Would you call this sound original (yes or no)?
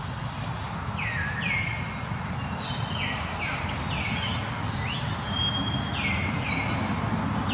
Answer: yes